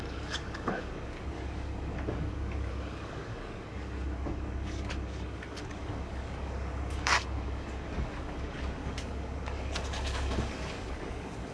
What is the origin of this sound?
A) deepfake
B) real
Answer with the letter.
A